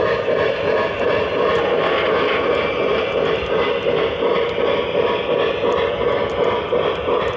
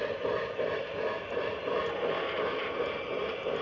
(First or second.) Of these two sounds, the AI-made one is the second